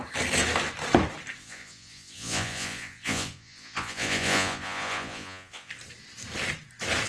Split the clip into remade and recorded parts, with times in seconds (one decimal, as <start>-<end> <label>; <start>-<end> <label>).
0.0-1.4 recorded; 1.4-5.7 remade; 5.7-7.1 recorded